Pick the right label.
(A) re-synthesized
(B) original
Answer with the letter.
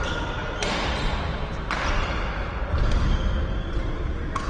B